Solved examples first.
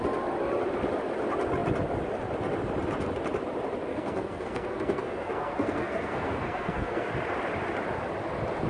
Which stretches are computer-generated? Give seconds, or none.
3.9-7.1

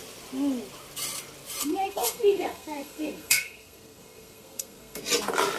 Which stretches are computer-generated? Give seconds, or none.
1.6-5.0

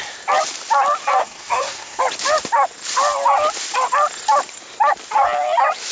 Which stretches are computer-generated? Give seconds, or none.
1.2-2.0